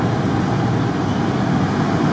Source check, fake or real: real